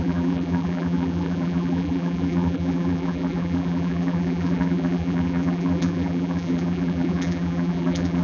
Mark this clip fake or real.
fake